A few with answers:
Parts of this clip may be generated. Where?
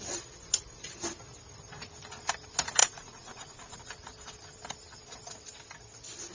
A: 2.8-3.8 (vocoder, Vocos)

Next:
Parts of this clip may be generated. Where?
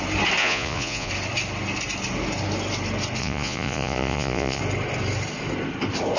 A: 0.4-1.1 (vocoder, Vocos); 3.2-4.6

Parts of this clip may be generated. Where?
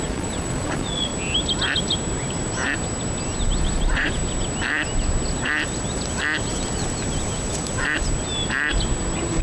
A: 0.0-1.1 (vocoder, Vocos); 3.6-4.2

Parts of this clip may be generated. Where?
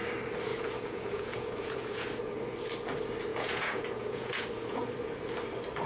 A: 0.5-2.2 (vocoder, Vocos); 3.3-4.9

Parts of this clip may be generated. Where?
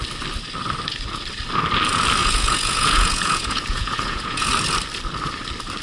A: 2.2-4.5 (vocoder, Vocos)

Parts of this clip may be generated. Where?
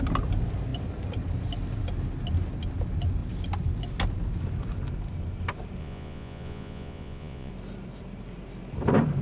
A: 5.8-7.5 (vocoder, Vocos)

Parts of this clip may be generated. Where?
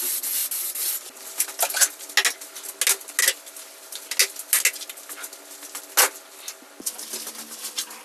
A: none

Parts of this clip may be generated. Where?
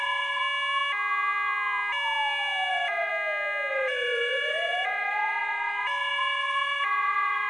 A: 0.0-0.4 (vocoder, Vocos); 2.7-3.1; 3.7-7.5